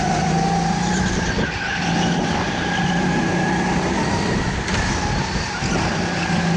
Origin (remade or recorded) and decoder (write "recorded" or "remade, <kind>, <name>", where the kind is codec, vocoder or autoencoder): recorded